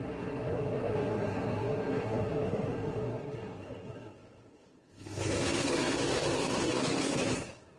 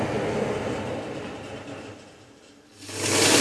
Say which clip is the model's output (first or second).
first